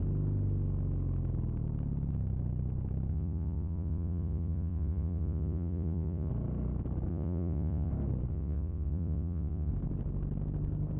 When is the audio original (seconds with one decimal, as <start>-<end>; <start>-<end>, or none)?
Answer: 0.0-3.1; 6.3-7.1; 7.9-8.3; 9.7-11.0

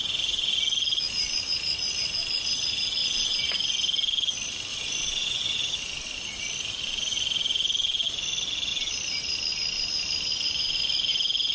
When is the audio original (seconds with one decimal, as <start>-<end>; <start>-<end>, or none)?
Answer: 0.0-3.0; 3.5-4.7; 5.7-11.5

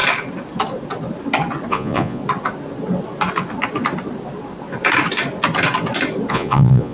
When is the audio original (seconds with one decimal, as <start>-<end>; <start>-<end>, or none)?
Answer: 0.0-1.7; 2.2-6.3

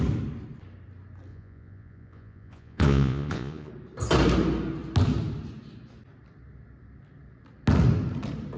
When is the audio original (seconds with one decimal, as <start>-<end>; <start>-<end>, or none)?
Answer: 0.0-1.3; 3.7-8.6